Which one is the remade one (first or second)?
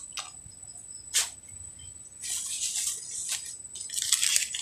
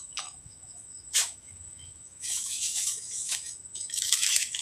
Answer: second